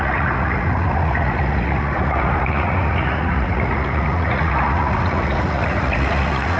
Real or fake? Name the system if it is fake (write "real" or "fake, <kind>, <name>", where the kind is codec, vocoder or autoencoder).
fake, vocoder, Vocos